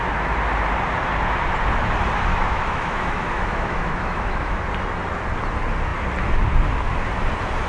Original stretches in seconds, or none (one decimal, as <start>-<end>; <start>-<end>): 0.0-2.3; 4.6-7.7